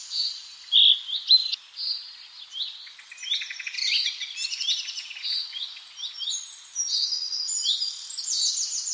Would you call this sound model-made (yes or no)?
yes